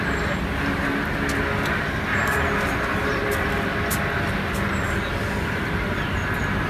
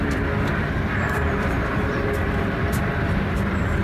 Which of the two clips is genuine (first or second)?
first